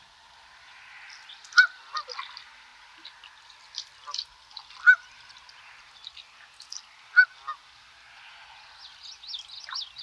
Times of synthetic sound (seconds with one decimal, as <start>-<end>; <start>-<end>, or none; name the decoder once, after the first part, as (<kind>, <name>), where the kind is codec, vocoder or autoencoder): none